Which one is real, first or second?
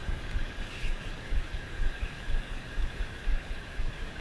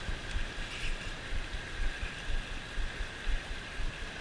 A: second